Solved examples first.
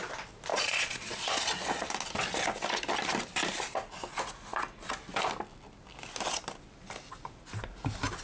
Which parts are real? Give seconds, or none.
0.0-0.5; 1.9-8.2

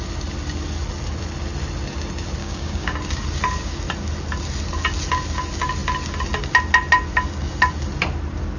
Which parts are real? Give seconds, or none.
0.0-2.4; 3.0-8.6

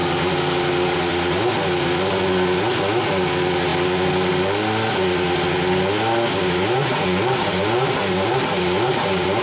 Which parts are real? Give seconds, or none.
0.0-6.8